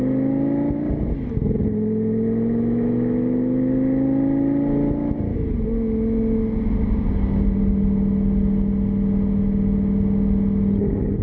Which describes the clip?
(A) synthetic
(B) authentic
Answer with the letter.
B